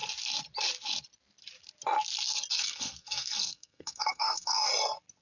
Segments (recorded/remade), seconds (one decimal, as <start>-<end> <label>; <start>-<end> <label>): 0.0-2.5 recorded; 2.5-4.7 remade; 4.7-5.2 recorded